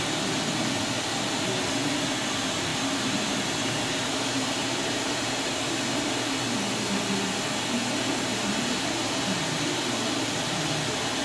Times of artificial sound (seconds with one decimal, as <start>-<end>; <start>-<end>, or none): 2.7-6.1; 8.3-9.1

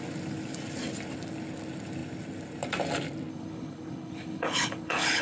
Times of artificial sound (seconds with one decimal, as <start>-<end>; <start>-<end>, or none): 3.3-5.2

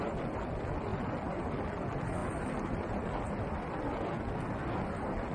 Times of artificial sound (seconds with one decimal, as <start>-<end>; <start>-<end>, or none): 0.9-1.7; 2.2-3.1

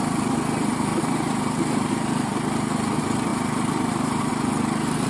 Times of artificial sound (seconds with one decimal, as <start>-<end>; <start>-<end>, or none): 0.9-2.0; 3.3-4.3

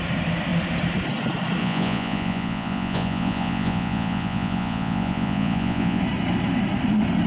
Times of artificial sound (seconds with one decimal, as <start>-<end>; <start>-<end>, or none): 1.6-6.0